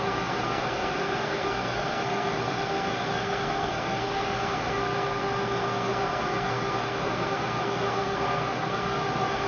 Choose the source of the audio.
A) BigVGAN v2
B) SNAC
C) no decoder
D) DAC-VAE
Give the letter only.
B